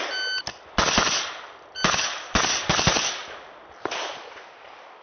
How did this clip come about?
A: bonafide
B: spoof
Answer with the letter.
A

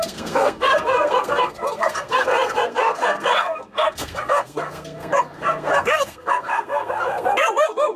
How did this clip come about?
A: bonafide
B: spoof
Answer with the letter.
B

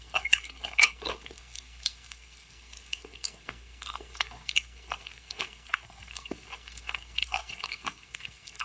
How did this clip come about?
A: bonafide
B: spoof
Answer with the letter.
B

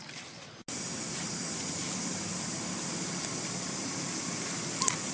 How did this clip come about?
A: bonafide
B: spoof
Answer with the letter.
A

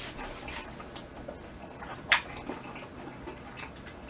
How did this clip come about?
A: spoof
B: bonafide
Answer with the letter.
B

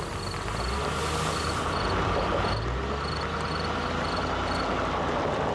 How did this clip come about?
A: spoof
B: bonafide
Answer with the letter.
B